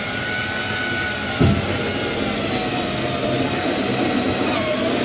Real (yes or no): yes